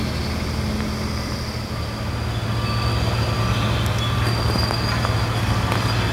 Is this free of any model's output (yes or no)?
yes